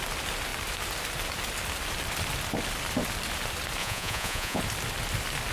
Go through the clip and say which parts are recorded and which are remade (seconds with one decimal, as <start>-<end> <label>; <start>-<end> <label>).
0.0-3.8 recorded; 3.8-4.6 remade; 4.6-5.5 recorded